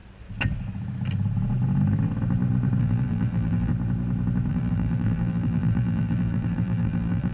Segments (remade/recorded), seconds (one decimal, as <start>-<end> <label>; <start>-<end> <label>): 0.0-2.8 recorded; 2.8-3.7 remade; 3.7-4.5 recorded; 4.5-7.3 remade

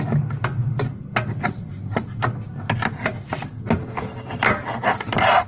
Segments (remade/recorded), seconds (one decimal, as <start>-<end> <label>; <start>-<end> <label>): 0.0-0.6 recorded; 0.6-2.2 remade; 2.2-5.5 recorded

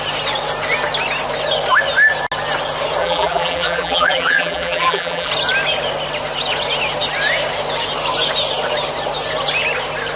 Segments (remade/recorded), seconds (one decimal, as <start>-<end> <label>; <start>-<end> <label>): 0.0-3.0 recorded; 3.0-5.3 remade; 5.3-10.2 recorded

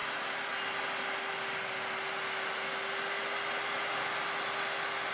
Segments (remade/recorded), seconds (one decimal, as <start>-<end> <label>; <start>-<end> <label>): 0.0-0.5 remade; 0.5-5.1 recorded

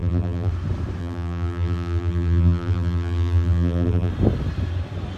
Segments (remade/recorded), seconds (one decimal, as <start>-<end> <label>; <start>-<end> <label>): 0.0-0.5 remade; 0.5-1.0 recorded; 1.0-4.1 remade; 4.1-5.2 recorded